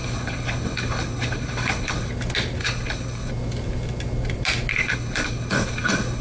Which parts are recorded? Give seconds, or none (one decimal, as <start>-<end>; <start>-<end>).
2.1-2.6; 3.3-4.7